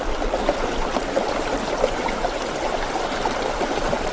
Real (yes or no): yes